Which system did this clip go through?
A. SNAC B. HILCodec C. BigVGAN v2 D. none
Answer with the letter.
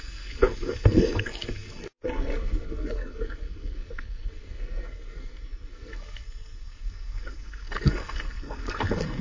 A